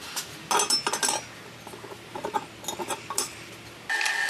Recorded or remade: recorded